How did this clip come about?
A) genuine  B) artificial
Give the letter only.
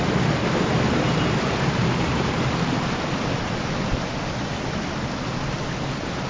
A